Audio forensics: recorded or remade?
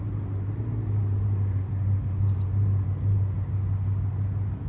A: recorded